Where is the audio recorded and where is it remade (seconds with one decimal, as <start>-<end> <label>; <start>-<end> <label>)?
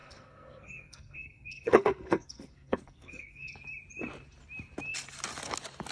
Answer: 0.0-3.5 remade; 3.5-5.9 recorded